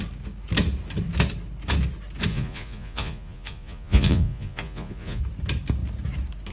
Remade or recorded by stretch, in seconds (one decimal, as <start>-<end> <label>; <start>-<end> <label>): 0.0-2.3 recorded; 2.3-5.2 remade; 5.2-6.5 recorded